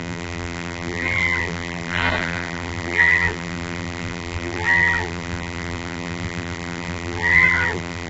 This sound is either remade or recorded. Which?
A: remade